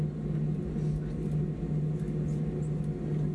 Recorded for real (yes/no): yes